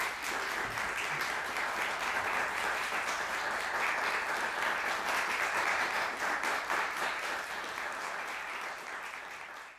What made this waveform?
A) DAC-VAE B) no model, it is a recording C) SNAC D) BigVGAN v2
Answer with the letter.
B